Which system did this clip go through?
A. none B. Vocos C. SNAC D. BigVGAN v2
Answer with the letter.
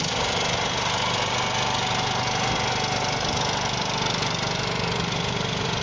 A